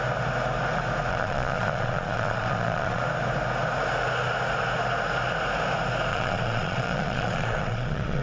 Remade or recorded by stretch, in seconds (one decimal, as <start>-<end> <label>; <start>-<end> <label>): 0.0-1.1 recorded; 1.1-3.0 remade; 3.0-6.1 recorded; 6.1-8.2 remade